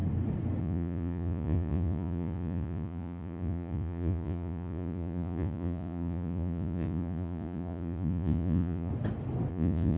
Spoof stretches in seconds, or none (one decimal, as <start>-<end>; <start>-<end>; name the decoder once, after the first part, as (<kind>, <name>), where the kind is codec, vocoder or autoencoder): 0.6-8.9 (vocoder, Vocos); 9.5-10.0